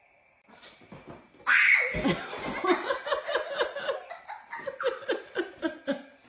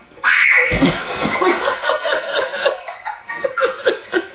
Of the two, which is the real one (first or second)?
first